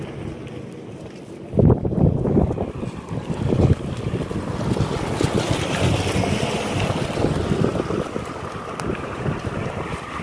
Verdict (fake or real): real